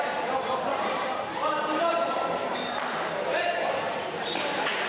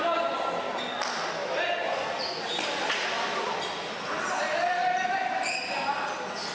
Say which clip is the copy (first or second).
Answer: first